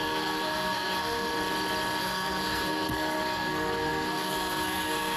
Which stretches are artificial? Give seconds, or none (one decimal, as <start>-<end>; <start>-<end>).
0.0-1.3; 2.0-5.2